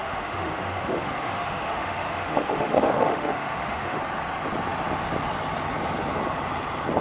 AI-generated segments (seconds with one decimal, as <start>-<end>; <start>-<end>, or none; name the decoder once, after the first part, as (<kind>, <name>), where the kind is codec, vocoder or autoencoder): 0.0-4.0 (autoencoder, DAC-VAE)